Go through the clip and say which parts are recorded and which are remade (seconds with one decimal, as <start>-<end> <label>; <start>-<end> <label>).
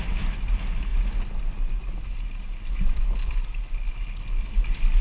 0.0-5.0 recorded